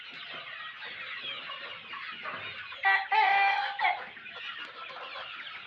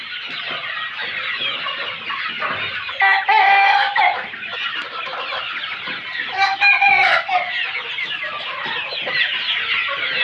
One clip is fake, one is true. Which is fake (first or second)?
second